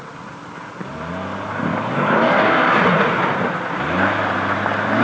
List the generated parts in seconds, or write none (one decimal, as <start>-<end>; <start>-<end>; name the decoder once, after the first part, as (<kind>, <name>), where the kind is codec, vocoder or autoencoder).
1.7-2.5 (codec, DAC)